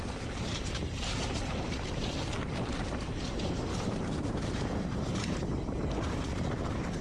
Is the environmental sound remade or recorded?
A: remade